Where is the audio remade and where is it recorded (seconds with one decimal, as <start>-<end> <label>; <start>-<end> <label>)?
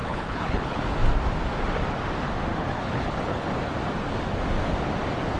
0.0-0.8 remade; 0.8-2.5 recorded; 2.5-3.5 remade; 3.5-5.4 recorded